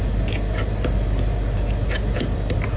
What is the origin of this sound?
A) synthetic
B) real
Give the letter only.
B